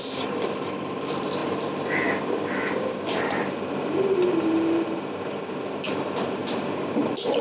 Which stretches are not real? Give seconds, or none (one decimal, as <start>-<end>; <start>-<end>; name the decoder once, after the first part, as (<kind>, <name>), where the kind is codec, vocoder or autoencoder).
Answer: 0.0-1.4 (vocoder, BigVGAN v2); 2.7-6.4